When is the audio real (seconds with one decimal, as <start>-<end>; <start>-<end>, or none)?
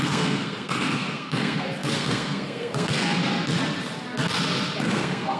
3.2-4.8